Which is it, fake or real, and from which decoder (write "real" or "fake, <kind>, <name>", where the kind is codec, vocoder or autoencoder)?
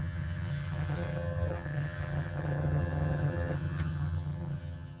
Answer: fake, vocoder, HiFi-GAN